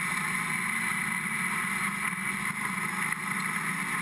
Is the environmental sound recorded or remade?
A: recorded